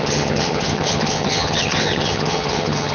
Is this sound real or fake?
fake